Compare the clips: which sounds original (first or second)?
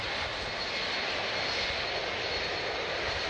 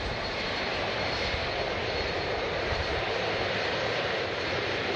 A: first